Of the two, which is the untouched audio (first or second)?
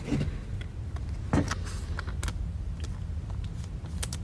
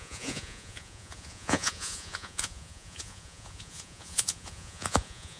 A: first